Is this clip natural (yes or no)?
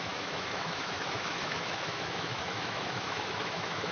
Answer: no